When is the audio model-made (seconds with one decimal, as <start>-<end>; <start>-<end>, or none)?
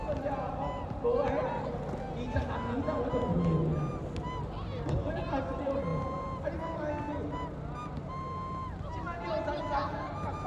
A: none